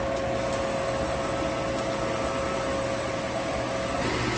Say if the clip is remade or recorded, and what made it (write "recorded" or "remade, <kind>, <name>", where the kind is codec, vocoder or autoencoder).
recorded